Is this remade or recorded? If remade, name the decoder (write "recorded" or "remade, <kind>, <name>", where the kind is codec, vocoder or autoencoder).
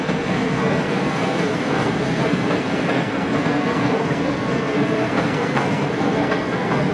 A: remade, codec, SNAC